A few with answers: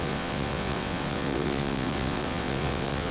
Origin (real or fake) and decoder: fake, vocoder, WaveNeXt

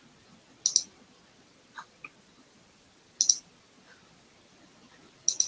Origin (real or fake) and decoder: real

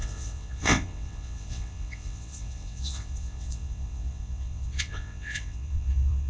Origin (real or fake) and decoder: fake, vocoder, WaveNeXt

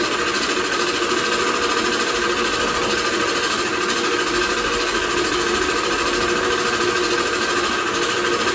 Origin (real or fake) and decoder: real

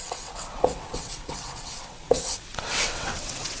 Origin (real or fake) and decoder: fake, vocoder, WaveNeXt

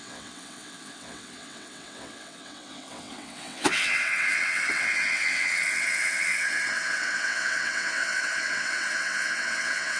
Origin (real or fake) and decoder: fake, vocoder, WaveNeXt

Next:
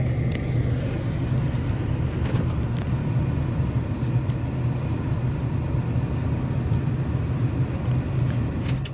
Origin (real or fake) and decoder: real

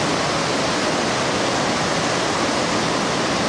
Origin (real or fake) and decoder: real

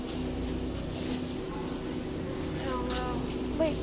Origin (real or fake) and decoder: real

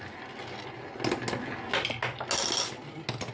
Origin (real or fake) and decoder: real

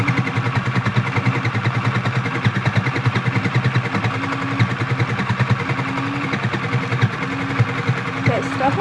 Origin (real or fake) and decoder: real